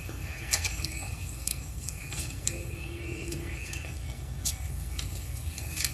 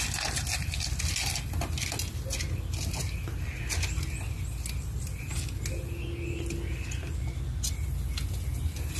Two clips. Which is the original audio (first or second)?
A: second